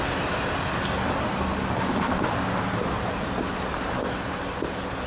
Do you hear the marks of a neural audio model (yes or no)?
no